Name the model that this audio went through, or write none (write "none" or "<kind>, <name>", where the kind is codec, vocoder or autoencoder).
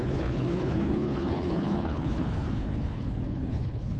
codec, HILCodec